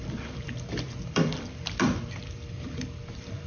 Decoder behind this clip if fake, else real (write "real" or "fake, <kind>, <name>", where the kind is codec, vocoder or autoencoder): fake, vocoder, BigVGAN v2